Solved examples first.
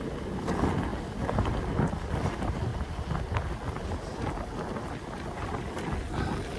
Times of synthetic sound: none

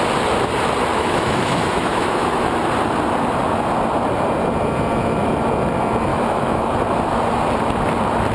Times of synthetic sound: 0.9-2.5 (autoencoder, DAC-VAE); 6.1-6.7

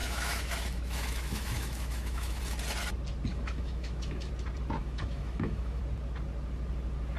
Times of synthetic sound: 0.0-2.4 (autoencoder, DAC-VAE); 3.3-4.3; 4.8-5.8